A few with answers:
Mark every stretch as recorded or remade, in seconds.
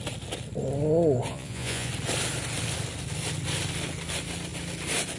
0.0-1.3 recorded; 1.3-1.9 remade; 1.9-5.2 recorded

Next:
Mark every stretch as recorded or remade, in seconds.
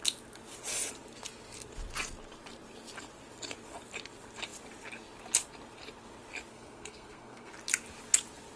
0.0-6.5 recorded; 6.5-7.5 remade; 7.5-8.6 recorded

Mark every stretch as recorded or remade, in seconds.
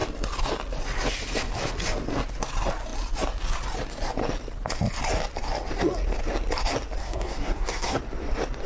0.0-7.0 recorded; 7.0-8.0 remade; 8.0-8.7 recorded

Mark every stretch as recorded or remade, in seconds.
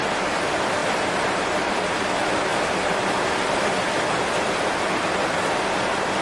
0.0-0.8 recorded; 0.8-2.0 remade; 2.0-6.2 recorded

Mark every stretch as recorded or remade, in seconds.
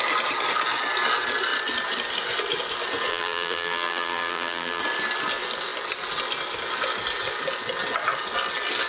0.0-3.1 recorded; 3.1-4.8 remade; 4.8-8.9 recorded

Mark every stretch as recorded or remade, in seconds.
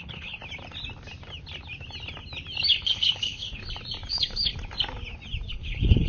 0.0-0.4 remade; 0.4-2.7 recorded; 2.7-3.6 remade; 3.6-4.1 recorded; 4.1-4.5 remade; 4.5-5.5 recorded; 5.5-6.1 remade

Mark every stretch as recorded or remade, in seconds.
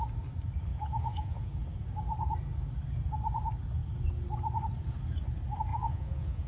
0.0-0.7 recorded; 0.7-1.6 remade; 1.6-5.7 recorded; 5.7-6.5 remade